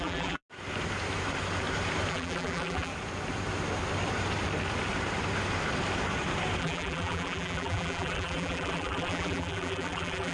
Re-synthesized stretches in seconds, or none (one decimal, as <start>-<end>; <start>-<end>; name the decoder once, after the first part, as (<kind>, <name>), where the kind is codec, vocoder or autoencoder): 0.0-0.4 (vocoder, BigVGAN v2); 2.1-2.9; 6.6-10.3